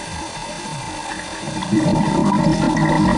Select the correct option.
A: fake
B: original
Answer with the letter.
B